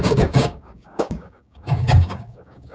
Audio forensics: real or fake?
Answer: fake